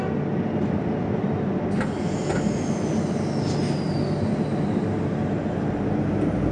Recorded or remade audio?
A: recorded